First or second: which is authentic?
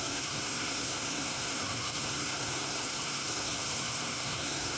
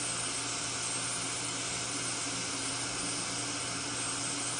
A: second